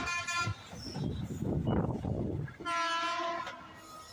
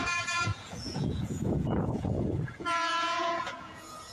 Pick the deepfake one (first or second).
second